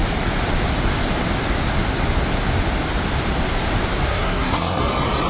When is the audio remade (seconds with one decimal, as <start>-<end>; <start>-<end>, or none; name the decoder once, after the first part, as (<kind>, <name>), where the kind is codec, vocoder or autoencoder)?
4.1-4.8 (codec, SNAC)